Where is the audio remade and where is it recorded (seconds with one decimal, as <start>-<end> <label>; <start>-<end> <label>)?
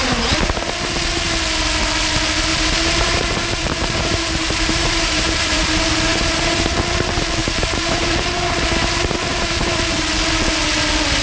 0.0-2.5 recorded; 2.5-5.6 remade; 5.6-6.1 recorded; 6.1-6.6 remade; 6.6-7.4 recorded; 7.4-8.7 remade; 8.7-9.3 recorded; 9.3-10.1 remade; 10.1-11.2 recorded